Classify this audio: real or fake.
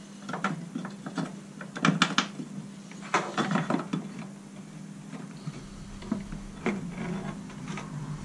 real